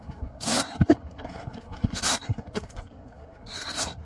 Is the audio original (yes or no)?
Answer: no